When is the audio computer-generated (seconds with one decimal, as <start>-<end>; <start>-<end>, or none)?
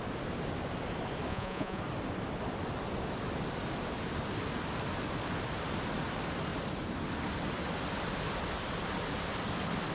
1.3-1.8